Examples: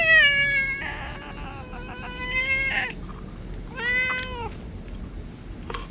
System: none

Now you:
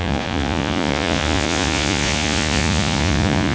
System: vocoder, Vocos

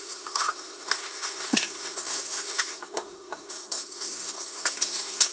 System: codec, SNAC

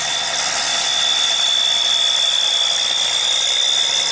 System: none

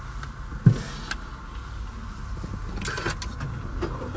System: none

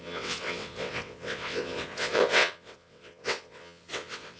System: vocoder, WaveNeXt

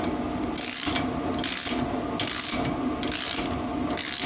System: none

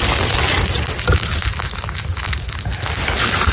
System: none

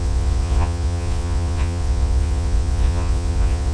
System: vocoder, Vocos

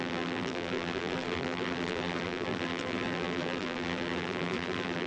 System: vocoder, BigVGAN v2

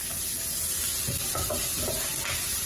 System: none